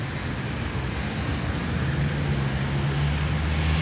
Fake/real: real